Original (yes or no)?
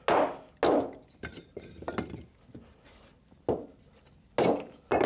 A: yes